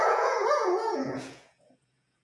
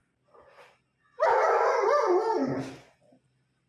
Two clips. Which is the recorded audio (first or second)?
second